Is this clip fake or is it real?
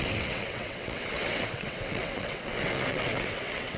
fake